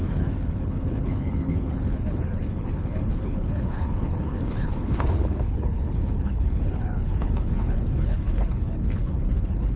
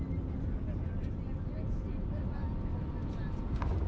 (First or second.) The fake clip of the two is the first